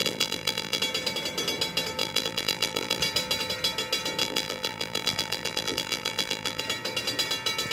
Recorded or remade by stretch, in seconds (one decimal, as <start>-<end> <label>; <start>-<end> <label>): 0.0-0.8 remade; 0.8-2.0 recorded; 2.0-3.0 remade; 3.0-4.2 recorded; 4.2-6.6 remade; 6.6-7.7 recorded